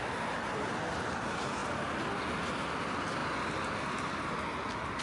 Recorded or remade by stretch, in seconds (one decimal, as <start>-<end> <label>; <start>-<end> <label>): 0.0-5.0 recorded